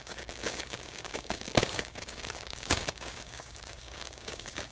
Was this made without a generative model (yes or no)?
no